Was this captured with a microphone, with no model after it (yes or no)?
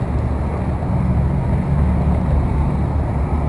yes